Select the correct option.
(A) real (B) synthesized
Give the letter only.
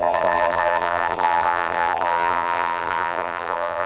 B